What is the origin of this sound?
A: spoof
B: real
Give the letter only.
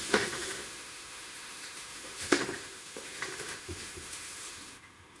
A